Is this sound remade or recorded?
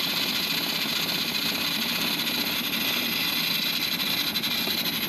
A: recorded